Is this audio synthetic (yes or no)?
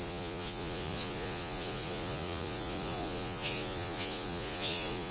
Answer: yes